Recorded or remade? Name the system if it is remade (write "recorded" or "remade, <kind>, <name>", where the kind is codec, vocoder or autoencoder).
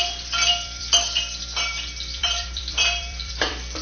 remade, vocoder, BigVGAN v2